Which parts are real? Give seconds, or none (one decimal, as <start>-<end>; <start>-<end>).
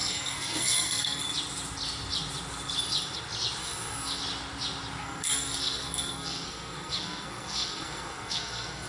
1.2-3.6; 4.2-5.0